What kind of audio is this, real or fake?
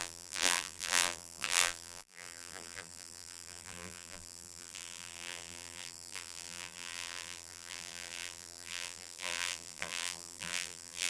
fake